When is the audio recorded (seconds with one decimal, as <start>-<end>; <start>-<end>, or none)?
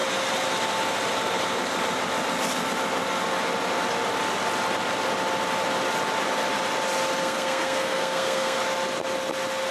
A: 0.0-7.2; 8.6-9.7